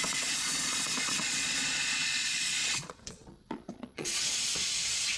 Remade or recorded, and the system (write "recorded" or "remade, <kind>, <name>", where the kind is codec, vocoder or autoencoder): remade, vocoder, Vocos